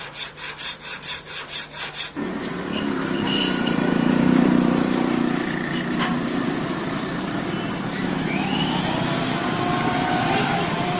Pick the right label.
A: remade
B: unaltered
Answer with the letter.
A